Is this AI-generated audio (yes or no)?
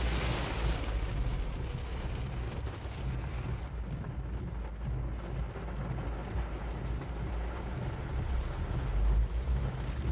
no